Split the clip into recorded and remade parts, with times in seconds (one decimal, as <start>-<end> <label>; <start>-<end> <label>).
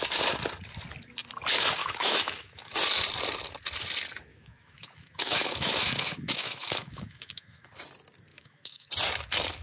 0.0-1.8 recorded; 1.8-2.7 remade; 2.7-4.3 recorded; 4.3-7.7 remade; 7.7-8.3 recorded; 8.3-8.9 remade; 8.9-9.6 recorded